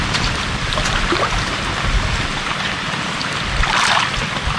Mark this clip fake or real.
real